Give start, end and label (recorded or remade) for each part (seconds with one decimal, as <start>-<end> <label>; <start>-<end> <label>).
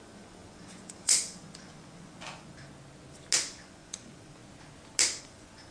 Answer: 0.0-2.7 remade; 2.7-3.6 recorded; 3.6-4.4 remade; 4.4-5.2 recorded; 5.2-5.7 remade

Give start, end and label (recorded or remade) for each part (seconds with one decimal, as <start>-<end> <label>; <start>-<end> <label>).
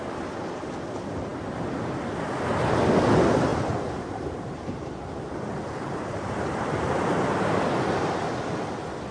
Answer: 0.0-9.1 recorded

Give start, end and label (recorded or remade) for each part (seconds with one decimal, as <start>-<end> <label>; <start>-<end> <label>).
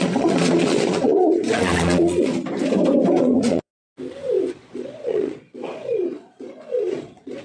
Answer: 0.0-2.3 remade; 2.3-3.2 recorded; 3.2-3.7 remade; 3.7-4.5 recorded; 4.5-7.4 remade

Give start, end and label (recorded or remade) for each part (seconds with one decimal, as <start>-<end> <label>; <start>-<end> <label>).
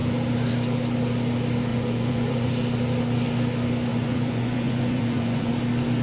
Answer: 0.0-1.7 recorded; 1.7-2.5 remade; 2.5-3.9 recorded; 3.9-5.5 remade; 5.5-6.0 recorded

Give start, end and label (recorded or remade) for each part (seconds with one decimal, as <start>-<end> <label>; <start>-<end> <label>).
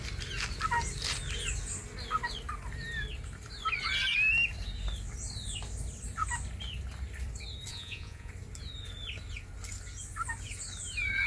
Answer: 0.0-7.7 recorded; 7.7-8.3 remade; 8.3-11.3 recorded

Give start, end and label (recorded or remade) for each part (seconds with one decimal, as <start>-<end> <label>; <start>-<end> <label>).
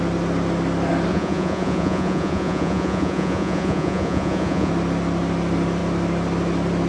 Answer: 0.0-1.1 recorded; 1.1-4.7 remade; 4.7-6.9 recorded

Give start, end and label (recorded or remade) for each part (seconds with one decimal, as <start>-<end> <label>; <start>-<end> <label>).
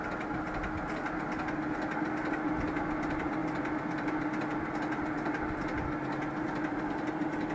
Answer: 0.0-7.5 recorded